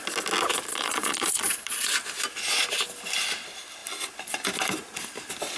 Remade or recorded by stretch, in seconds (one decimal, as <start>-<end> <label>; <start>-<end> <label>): 0.0-0.7 recorded; 0.7-1.9 remade; 1.9-5.6 recorded